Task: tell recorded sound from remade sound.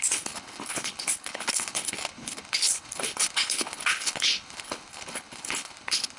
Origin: remade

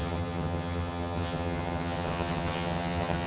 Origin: remade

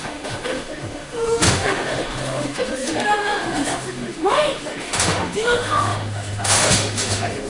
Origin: remade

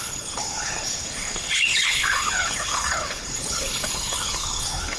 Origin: remade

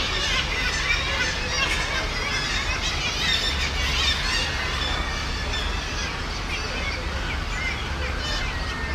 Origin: recorded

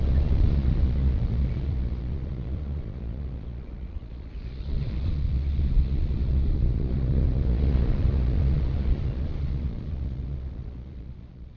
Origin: remade